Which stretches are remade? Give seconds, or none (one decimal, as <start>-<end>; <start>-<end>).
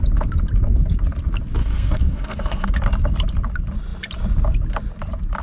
1.6-2.7